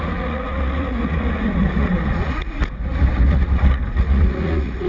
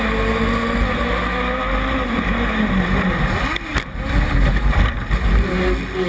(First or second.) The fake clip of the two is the first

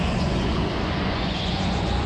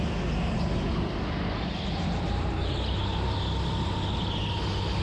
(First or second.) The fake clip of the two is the first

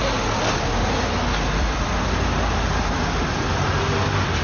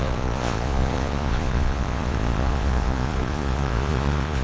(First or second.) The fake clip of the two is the second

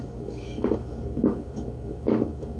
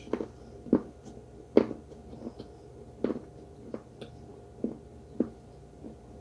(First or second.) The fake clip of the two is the first